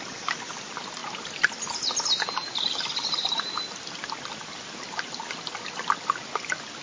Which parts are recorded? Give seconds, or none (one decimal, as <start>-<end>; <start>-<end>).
0.0-6.8